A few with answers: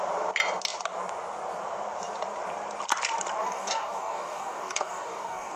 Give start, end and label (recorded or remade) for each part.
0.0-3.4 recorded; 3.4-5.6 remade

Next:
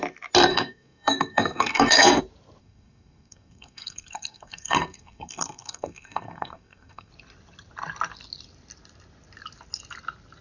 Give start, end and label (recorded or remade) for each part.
0.0-0.5 recorded; 0.5-2.2 remade; 2.2-2.6 recorded; 2.6-7.1 remade; 7.1-10.4 recorded

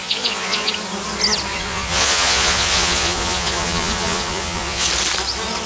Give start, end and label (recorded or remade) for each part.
0.0-0.7 remade; 0.7-1.5 recorded; 1.5-4.9 remade; 4.9-5.7 recorded

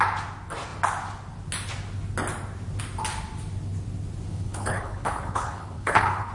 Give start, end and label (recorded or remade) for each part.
0.0-4.3 recorded; 4.3-6.3 remade

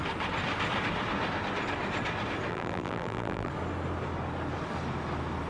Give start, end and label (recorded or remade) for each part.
0.0-2.5 recorded; 2.5-3.5 remade; 3.5-5.5 recorded